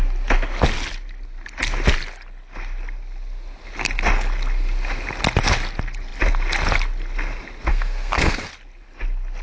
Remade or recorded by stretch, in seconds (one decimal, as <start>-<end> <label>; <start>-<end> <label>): 0.0-7.7 recorded; 7.7-8.5 remade; 8.5-9.4 recorded